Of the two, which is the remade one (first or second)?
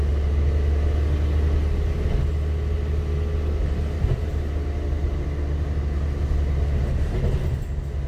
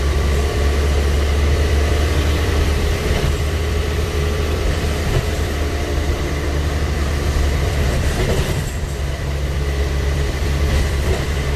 second